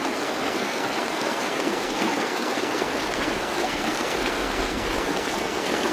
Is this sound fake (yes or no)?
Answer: yes